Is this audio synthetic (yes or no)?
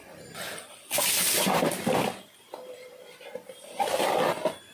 no